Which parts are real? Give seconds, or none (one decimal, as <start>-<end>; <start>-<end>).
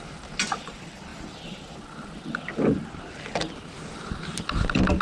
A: 0.0-5.0